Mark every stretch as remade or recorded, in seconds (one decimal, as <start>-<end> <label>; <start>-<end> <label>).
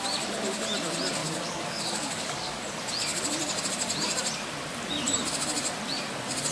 0.0-1.2 recorded; 1.2-2.6 remade; 2.6-6.5 recorded